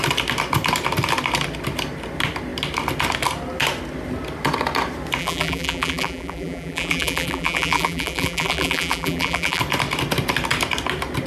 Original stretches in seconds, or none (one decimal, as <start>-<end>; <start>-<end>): 0.0-5.2; 9.6-11.3